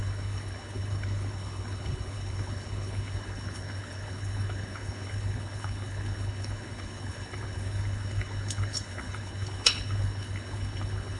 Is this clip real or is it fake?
fake